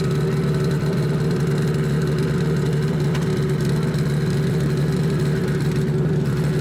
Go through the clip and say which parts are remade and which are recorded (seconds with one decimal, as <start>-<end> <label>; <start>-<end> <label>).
0.0-6.6 remade